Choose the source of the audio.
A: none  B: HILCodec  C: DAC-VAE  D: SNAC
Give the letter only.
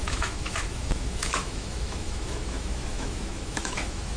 C